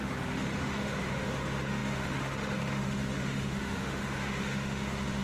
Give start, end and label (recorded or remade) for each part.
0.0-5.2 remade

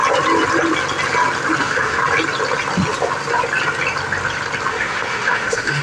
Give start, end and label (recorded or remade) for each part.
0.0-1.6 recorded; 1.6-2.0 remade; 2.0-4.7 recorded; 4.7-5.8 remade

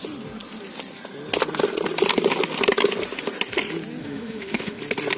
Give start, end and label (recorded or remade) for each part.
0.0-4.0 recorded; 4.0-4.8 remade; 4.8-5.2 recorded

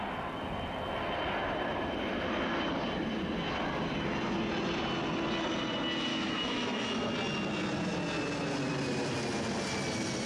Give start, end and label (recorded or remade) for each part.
0.0-6.1 recorded; 6.1-7.1 remade; 7.1-10.3 recorded

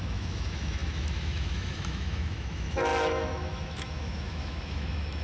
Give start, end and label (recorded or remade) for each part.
0.0-5.2 remade

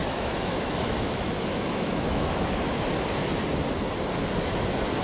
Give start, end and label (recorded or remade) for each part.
0.0-2.8 remade; 2.8-5.0 recorded

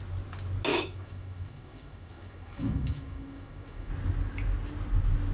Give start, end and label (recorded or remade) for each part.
0.0-0.7 recorded; 0.7-3.9 remade; 3.9-5.3 recorded

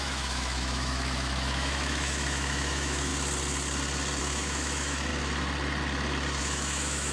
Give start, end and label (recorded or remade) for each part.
0.0-3.1 remade; 3.1-4.2 recorded; 4.2-5.1 remade; 5.1-6.4 recorded; 6.4-7.1 remade